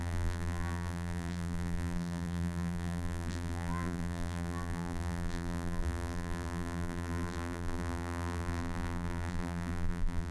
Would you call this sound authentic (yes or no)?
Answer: no